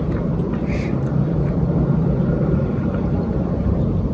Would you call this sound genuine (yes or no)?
no